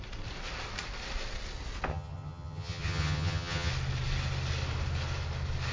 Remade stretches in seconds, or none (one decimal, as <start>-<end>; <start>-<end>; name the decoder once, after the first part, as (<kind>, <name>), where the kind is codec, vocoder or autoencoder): 1.9-3.7 (vocoder, HiFi-GAN)